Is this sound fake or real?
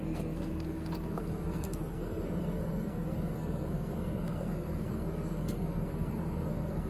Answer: fake